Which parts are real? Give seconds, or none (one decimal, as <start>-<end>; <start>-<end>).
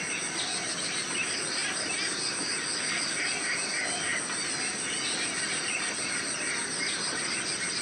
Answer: 0.0-7.8